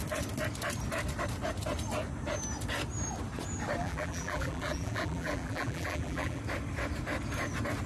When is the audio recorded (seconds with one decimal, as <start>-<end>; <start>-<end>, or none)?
0.0-3.8; 6.4-7.9